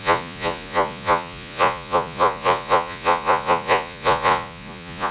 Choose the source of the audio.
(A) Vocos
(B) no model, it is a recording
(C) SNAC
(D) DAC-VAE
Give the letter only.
A